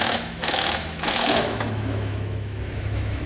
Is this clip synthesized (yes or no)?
yes